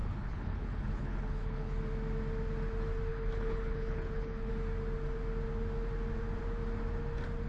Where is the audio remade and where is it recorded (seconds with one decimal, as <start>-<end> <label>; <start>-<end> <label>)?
0.0-1.8 remade; 1.8-3.1 recorded; 3.1-4.5 remade; 4.5-7.5 recorded